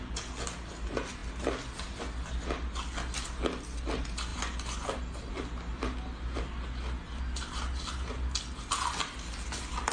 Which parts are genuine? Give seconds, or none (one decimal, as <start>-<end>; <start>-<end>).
0.0-9.9